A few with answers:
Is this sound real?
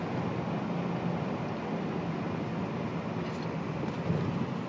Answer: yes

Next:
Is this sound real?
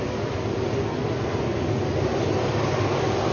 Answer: yes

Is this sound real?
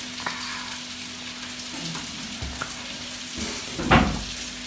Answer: yes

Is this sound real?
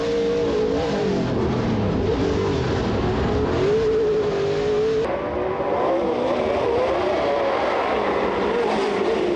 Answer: yes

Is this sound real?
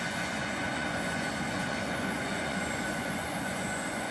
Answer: no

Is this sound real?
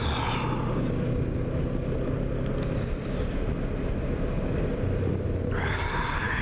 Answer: yes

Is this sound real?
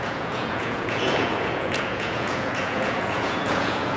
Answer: no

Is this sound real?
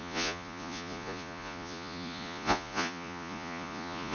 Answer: no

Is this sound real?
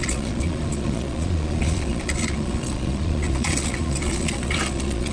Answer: no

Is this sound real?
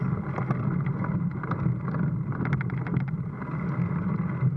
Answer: yes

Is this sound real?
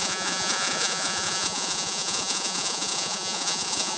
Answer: no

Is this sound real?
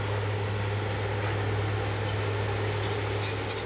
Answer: yes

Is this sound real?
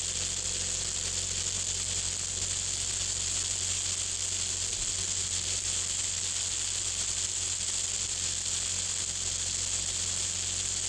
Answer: yes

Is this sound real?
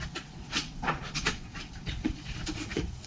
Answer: no